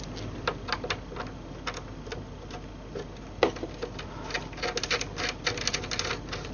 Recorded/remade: recorded